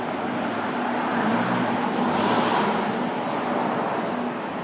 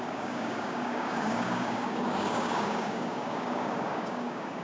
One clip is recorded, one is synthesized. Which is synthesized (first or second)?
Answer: second